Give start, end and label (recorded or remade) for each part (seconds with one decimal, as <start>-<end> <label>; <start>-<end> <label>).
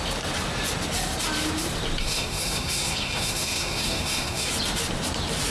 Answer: 0.0-2.0 recorded; 2.0-4.5 remade; 4.5-5.5 recorded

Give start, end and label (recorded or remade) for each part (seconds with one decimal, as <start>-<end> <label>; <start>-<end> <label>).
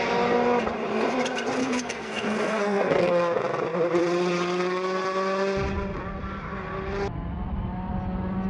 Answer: 0.0-1.6 recorded; 1.6-3.0 remade; 3.0-8.5 recorded